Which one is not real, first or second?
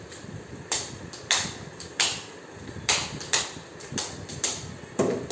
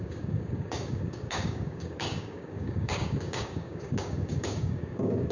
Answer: second